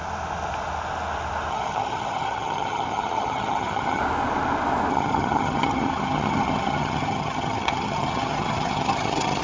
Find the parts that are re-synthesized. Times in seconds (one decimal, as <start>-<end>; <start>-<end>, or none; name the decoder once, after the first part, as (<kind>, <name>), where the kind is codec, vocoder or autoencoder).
1.5-4.0 (vocoder, HiFi-GAN); 4.9-9.4